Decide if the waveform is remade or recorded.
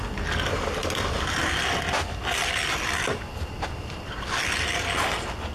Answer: recorded